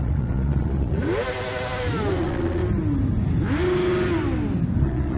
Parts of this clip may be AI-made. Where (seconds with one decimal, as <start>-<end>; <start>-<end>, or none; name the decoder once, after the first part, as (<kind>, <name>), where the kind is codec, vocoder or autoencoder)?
0.0-1.0 (vocoder, Vocos); 2.2-2.6; 4.8-5.2